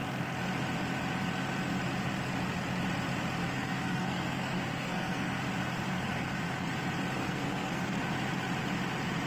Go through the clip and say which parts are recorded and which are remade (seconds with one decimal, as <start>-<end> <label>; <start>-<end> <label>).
0.0-3.4 recorded; 3.4-5.4 remade; 5.4-5.9 recorded; 5.9-6.7 remade; 6.7-7.2 recorded; 7.2-8.1 remade; 8.1-9.3 recorded